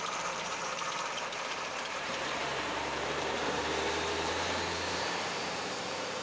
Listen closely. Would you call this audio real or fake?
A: fake